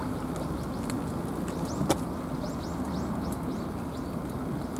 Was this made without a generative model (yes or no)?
yes